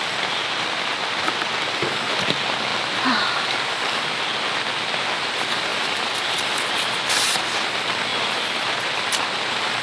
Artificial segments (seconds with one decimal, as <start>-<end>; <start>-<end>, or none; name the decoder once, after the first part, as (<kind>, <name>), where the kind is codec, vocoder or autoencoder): 2.7-4.3 (vocoder, BigVGAN v2); 5.7-7.0; 8.1-9.0